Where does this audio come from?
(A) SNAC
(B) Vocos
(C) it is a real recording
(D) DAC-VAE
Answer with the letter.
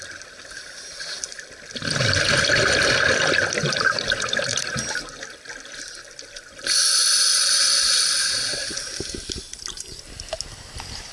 C